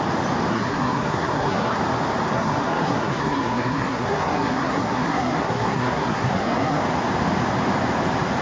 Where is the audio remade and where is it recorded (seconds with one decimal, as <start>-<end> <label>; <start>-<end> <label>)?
0.0-0.5 recorded; 0.5-1.8 remade; 1.8-2.3 recorded; 2.3-6.8 remade; 6.8-8.4 recorded